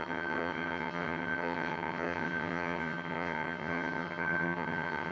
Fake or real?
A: fake